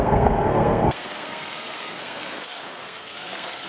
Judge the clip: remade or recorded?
remade